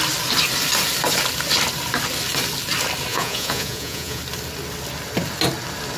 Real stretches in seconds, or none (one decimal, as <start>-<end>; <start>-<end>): 0.0-3.1; 4.2-6.0